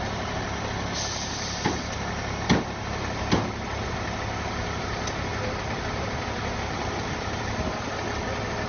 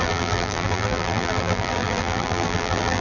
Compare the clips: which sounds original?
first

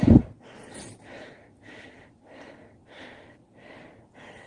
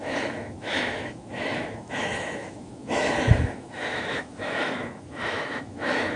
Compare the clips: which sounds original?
first